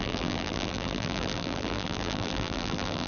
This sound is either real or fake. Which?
fake